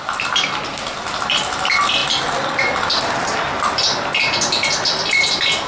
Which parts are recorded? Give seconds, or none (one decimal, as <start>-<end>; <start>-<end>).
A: 0.0-5.7